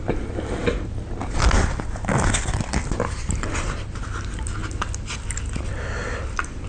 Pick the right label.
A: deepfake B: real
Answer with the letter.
B